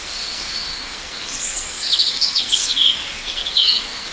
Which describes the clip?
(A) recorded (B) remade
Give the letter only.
B